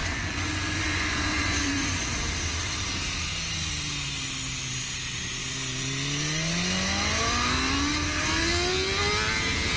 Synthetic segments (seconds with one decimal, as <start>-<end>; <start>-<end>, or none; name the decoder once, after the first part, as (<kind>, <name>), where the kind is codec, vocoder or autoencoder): 0.0-2.1 (vocoder, Vocos)